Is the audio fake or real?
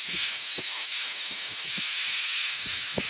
fake